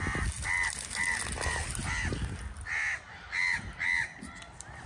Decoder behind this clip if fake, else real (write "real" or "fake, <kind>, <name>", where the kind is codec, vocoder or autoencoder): real